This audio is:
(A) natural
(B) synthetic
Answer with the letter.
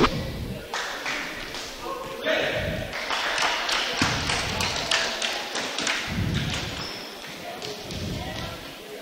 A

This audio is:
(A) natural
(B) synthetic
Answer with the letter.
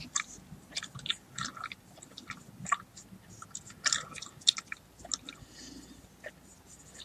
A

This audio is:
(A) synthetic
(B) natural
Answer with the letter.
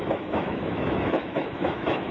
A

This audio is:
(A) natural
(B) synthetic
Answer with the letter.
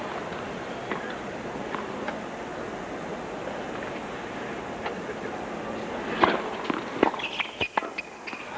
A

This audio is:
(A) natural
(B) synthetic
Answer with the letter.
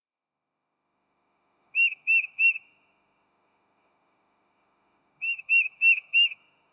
B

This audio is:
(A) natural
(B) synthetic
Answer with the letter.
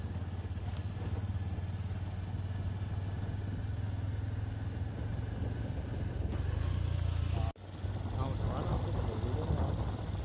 A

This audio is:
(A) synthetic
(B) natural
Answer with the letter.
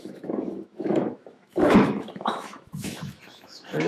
A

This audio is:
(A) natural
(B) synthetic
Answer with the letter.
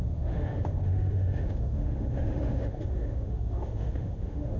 B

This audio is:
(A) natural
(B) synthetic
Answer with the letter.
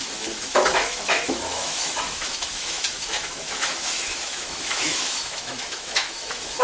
B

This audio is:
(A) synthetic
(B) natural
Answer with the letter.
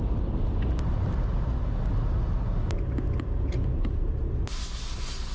B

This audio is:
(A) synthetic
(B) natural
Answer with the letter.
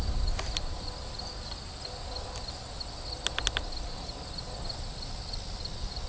B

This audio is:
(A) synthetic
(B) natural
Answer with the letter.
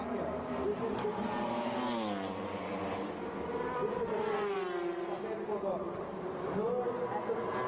B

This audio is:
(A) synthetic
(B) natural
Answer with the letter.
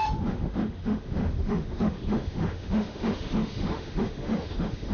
A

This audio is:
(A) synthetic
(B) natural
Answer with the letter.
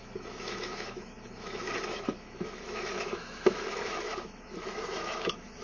A